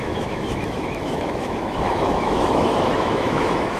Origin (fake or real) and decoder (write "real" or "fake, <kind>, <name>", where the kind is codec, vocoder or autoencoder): fake, autoencoder, DAC-VAE